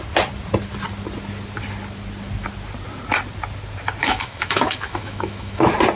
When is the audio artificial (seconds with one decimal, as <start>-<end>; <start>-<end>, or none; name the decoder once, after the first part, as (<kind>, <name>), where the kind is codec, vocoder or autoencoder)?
4.0-5.6 (autoencoder, DAC-VAE)